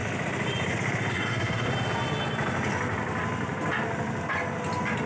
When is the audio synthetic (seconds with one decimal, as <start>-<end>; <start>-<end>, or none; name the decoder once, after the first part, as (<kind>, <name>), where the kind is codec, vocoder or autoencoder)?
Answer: 1.1-1.7 (codec, SNAC)